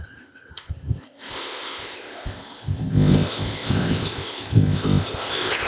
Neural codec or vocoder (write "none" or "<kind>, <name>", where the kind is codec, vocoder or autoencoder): codec, ZipCodec